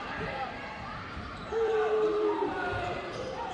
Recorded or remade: remade